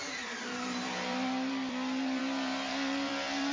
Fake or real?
fake